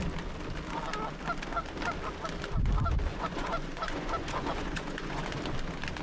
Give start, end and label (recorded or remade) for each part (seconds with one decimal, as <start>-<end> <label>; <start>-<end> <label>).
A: 0.0-3.1 recorded; 3.1-5.4 remade; 5.4-6.0 recorded